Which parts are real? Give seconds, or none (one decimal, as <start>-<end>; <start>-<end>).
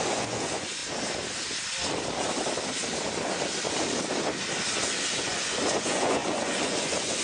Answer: 0.8-5.1